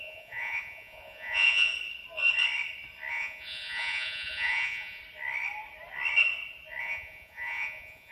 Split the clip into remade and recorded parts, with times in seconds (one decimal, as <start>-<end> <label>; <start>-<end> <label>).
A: 0.0-1.7 remade; 1.7-3.1 recorded; 3.1-5.0 remade; 5.0-6.8 recorded; 6.8-8.1 remade